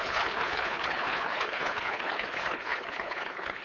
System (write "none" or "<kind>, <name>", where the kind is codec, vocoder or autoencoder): codec, HILCodec